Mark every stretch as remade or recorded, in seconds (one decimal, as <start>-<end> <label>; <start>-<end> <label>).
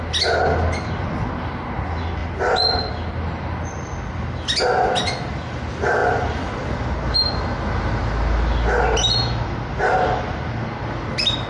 0.0-6.0 recorded; 6.0-6.7 remade; 6.7-11.5 recorded